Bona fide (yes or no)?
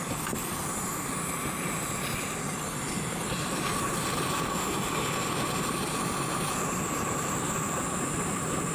yes